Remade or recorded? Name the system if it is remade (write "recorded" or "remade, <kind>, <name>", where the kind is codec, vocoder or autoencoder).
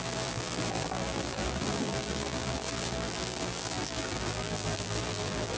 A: remade, vocoder, BigVGAN v2